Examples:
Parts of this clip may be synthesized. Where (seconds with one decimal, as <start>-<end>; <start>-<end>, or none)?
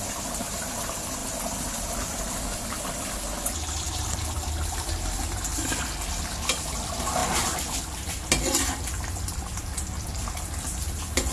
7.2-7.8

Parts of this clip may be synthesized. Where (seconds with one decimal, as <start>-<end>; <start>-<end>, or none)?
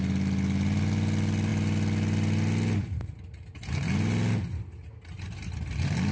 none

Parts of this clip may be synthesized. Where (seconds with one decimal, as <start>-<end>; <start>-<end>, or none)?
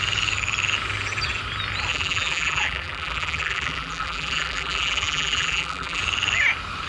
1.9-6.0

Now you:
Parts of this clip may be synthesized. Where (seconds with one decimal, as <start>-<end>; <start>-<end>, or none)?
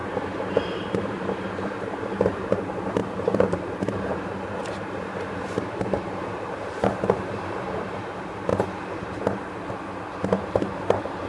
0.5-8.5; 10.4-11.3